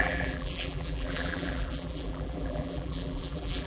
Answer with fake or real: fake